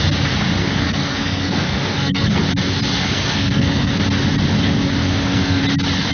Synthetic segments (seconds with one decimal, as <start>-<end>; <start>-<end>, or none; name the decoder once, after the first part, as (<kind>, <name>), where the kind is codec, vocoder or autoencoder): 0.6-2.4 (codec, SNAC); 3.0-4.0; 5.0-5.6